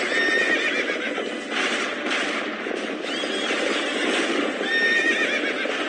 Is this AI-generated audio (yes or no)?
no